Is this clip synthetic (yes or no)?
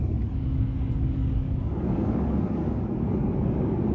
yes